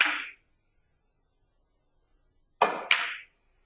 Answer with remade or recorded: recorded